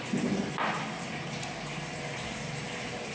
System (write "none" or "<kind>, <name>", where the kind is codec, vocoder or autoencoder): none